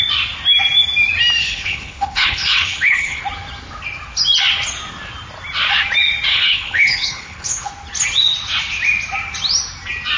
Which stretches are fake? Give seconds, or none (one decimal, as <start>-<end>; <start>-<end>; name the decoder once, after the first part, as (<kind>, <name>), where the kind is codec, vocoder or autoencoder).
1.4-3.2 (codec, HILCodec); 6.3-7.7